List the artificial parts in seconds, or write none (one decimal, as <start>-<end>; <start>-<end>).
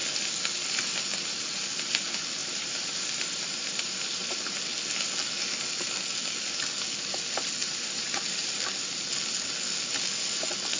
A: 2.4-4.6; 7.6-8.6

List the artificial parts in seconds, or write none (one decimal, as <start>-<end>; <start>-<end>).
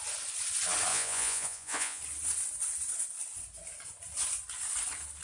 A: 0.9-2.0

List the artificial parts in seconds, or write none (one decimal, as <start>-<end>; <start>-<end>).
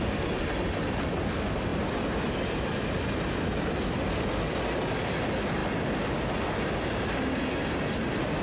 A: none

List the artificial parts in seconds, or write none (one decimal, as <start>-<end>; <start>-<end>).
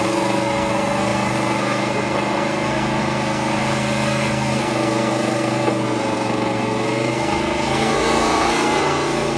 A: 0.0-9.4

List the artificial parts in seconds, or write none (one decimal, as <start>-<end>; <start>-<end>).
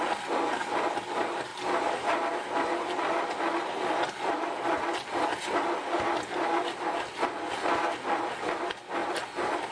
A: 9.0-9.7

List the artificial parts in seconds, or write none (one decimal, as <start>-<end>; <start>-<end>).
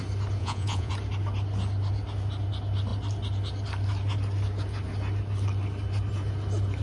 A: 0.4-0.9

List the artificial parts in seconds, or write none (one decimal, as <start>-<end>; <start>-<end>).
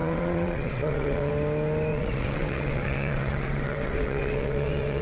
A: 0.0-1.3; 1.9-5.0